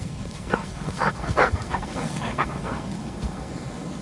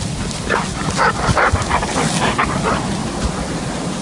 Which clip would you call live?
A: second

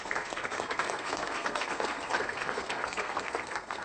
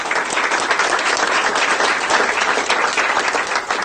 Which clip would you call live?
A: second